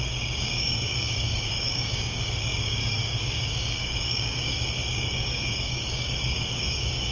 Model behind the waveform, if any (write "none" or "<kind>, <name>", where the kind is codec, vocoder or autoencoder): codec, DAC